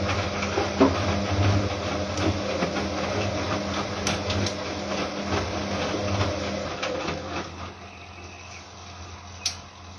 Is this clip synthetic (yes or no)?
no